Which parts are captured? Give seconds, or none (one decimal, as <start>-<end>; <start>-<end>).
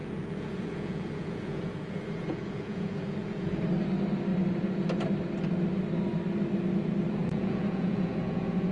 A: 3.6-7.2